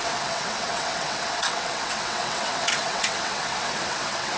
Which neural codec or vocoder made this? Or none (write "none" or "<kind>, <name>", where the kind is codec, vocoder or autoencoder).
vocoder, WaveNeXt